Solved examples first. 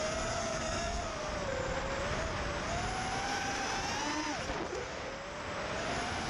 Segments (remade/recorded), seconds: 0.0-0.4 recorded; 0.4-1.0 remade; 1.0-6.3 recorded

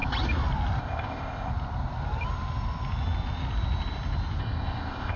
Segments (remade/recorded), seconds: 0.0-0.8 recorded; 0.8-1.5 remade; 1.5-4.4 recorded; 4.4-5.2 remade

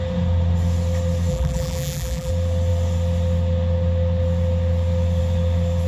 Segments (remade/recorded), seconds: 0.0-1.3 recorded; 1.3-2.3 remade; 2.3-5.9 recorded